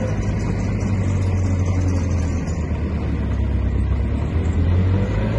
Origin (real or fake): real